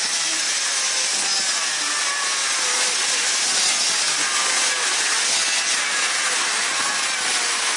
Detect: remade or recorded recorded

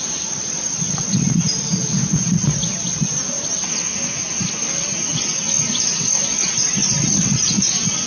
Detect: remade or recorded recorded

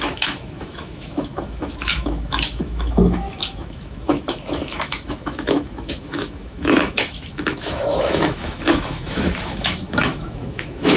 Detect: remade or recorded remade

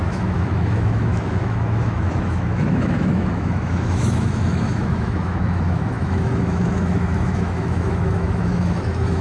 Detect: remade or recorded remade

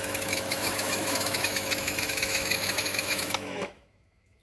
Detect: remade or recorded remade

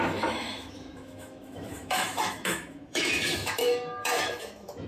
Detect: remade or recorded remade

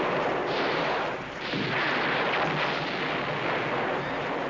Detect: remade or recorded recorded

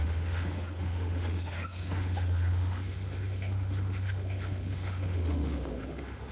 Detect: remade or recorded remade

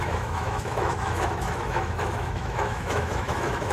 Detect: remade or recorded remade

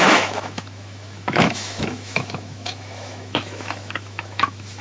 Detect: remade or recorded remade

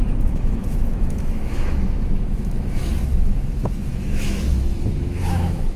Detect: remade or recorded remade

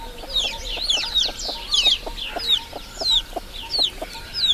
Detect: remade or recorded recorded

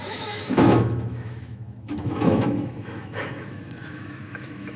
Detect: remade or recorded remade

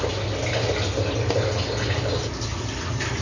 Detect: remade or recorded recorded